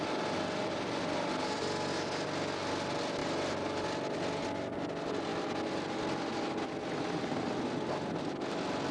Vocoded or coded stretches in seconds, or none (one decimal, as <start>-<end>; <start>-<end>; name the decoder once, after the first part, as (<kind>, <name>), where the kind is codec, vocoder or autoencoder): none